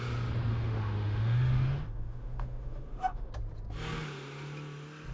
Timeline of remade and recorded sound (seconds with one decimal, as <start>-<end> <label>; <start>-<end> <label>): 0.0-0.5 recorded; 0.5-3.3 remade; 3.3-5.1 recorded